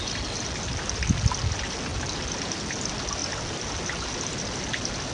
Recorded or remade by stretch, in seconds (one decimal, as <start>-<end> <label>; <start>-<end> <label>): 0.0-5.1 recorded